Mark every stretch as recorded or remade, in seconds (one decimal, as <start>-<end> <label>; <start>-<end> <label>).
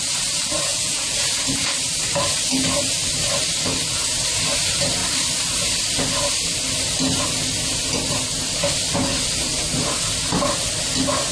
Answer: 0.0-0.7 recorded; 0.7-1.7 remade; 1.7-11.3 recorded